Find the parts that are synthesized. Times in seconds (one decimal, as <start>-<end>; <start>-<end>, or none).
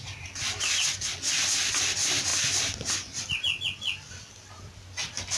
none